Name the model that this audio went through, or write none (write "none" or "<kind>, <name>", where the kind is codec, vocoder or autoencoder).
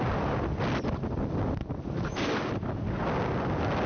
none